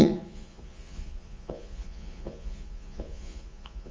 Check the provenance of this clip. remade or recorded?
remade